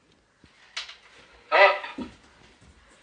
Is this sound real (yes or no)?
yes